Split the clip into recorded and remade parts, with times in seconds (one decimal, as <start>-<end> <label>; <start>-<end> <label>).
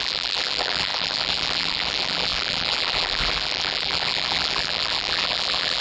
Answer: 0.0-5.8 remade